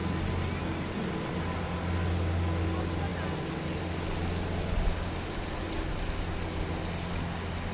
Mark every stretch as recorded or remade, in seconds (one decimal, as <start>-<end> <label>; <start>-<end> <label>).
0.0-7.7 recorded